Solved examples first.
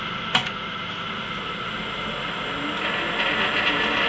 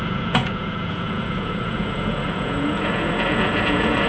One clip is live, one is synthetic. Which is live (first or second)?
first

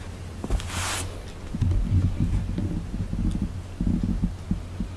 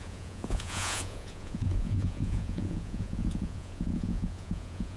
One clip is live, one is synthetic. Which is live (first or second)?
first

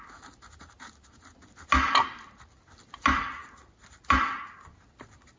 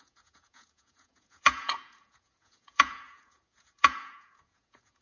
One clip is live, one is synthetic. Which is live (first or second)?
first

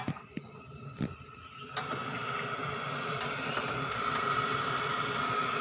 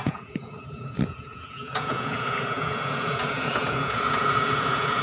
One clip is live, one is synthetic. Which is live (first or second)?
first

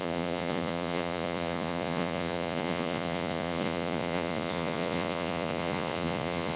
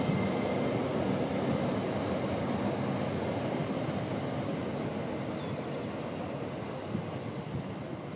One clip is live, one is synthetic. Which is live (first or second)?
second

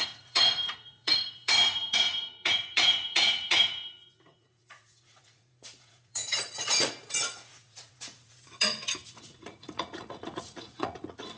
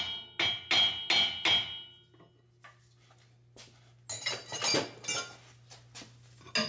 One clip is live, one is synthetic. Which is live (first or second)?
second